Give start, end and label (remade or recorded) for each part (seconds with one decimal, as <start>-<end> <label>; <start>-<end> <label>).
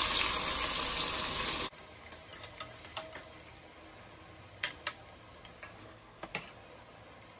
0.0-5.8 recorded; 5.8-6.3 remade; 6.3-7.4 recorded